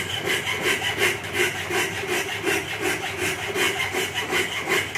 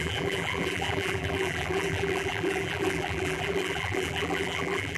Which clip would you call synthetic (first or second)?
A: second